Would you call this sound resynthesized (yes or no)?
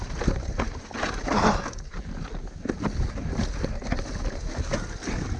no